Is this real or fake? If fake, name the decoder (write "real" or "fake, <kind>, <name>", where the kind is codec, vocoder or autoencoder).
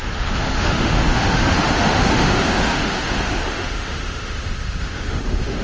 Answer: fake, autoencoder, DAC-VAE